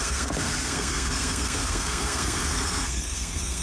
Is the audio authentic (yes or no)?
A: no